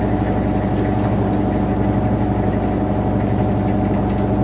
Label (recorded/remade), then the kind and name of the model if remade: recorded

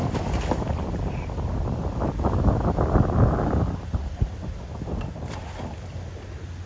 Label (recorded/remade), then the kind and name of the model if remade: recorded